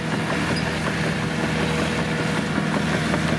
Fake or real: real